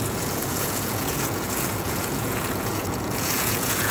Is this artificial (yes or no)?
yes